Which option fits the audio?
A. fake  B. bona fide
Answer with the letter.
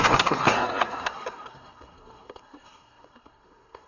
A